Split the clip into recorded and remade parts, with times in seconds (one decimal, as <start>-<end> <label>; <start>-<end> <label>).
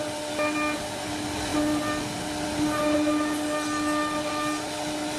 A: 0.0-5.2 recorded